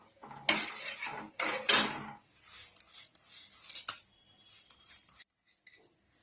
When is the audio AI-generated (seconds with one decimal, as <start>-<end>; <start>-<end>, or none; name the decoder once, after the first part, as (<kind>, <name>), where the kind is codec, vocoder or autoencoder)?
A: none